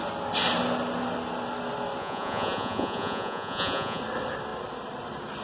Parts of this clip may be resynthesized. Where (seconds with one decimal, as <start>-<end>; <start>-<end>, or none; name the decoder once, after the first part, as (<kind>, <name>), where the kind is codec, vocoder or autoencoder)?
2.0-4.0 (vocoder, Vocos)